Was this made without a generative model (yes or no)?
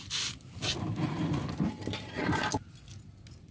yes